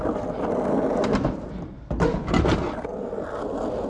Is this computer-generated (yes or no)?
no